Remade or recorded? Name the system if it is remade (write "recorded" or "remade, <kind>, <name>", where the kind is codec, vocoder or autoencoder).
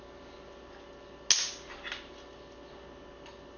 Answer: recorded